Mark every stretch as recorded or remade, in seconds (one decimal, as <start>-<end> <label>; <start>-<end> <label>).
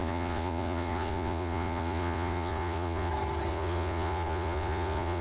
0.0-3.1 remade; 3.1-3.5 recorded; 3.5-5.2 remade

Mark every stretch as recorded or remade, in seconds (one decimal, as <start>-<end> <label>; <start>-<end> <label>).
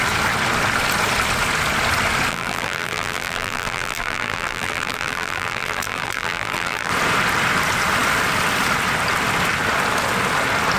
0.0-2.3 recorded; 2.3-6.9 remade; 6.9-10.8 recorded